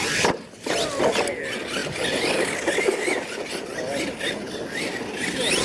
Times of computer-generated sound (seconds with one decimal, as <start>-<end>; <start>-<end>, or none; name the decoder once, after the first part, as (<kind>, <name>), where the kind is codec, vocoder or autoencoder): none